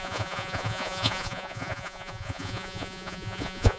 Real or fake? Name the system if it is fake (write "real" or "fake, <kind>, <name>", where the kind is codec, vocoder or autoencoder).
fake, vocoder, Vocos